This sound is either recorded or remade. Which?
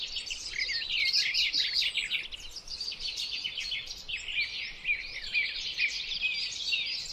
recorded